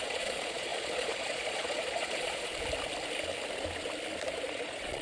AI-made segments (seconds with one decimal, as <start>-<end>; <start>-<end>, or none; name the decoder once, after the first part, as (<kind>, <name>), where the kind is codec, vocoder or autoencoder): 0.0-2.5 (vocoder, Vocos); 4.3-5.0